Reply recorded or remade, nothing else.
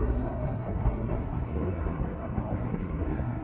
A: remade